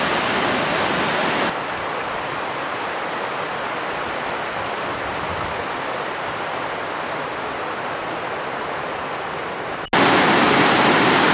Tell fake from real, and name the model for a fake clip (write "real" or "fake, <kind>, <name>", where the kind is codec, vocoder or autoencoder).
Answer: real